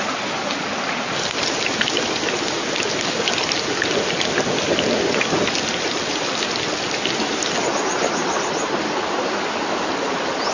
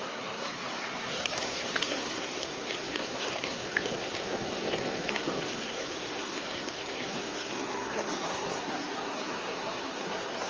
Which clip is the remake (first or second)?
second